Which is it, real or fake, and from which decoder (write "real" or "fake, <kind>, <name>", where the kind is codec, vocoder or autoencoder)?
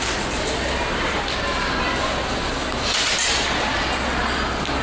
real